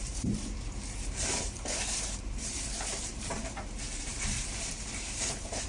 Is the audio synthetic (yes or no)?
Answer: yes